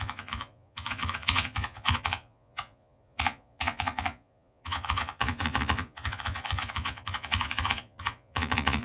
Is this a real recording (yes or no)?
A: no